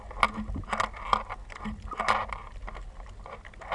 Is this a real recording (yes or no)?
yes